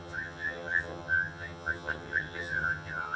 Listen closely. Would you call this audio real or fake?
fake